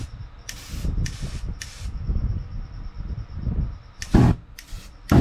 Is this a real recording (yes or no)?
yes